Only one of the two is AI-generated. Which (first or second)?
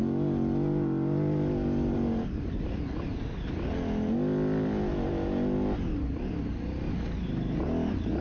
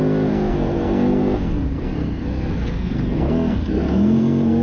second